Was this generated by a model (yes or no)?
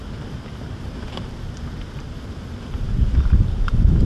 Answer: yes